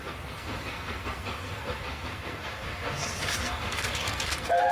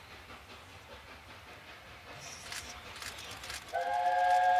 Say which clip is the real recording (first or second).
second